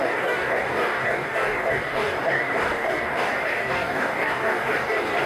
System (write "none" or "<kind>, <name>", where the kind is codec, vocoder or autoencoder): codec, DAC